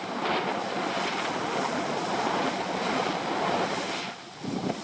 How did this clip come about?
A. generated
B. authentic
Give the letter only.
B